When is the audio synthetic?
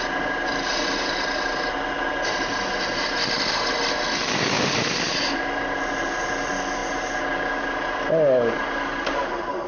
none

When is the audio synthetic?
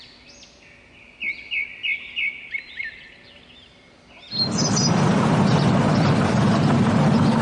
none